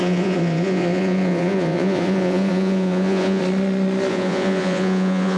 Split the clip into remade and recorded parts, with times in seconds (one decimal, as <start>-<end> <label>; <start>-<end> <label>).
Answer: 0.0-3.4 remade; 3.4-4.1 recorded; 4.1-5.4 remade